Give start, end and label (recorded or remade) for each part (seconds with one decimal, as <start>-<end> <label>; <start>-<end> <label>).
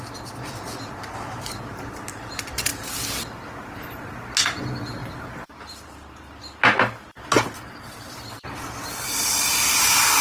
0.0-10.2 recorded